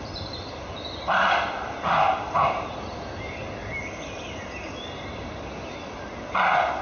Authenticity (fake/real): real